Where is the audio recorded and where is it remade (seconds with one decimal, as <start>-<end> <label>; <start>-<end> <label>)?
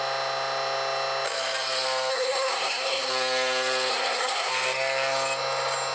0.0-2.1 recorded; 2.1-3.1 remade; 3.1-3.9 recorded; 3.9-4.5 remade; 4.5-5.9 recorded